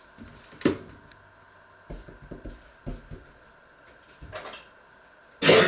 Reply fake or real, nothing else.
real